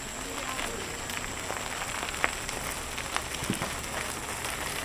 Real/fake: real